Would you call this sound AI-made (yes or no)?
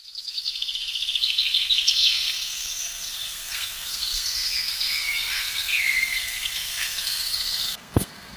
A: yes